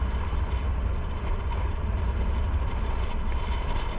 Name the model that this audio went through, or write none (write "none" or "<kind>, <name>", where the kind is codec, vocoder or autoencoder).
none